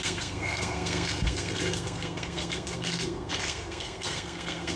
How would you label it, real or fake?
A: fake